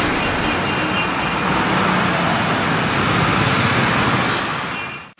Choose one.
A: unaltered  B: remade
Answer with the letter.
A